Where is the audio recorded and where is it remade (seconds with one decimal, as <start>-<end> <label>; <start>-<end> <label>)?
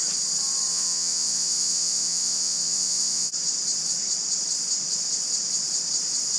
0.0-0.7 recorded; 0.7-3.3 remade; 3.3-6.4 recorded